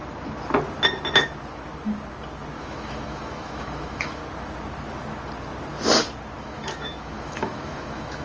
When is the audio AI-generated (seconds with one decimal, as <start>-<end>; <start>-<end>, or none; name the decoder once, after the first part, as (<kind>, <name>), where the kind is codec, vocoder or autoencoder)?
2.6-4.2 (autoencoder, DAC-VAE); 6.4-8.2